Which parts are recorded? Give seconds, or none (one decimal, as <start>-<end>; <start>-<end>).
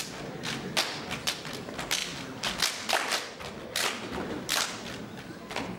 0.0-5.8